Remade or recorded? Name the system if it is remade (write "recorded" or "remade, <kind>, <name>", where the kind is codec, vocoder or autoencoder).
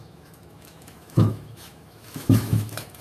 remade, autoencoder, DAC-VAE